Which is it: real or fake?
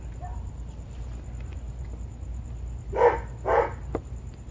real